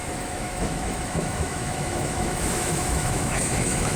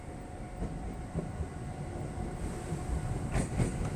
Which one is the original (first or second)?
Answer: second